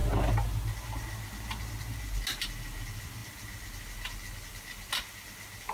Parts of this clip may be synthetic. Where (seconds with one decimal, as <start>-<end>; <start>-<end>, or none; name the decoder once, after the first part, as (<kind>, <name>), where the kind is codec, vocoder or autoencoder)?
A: none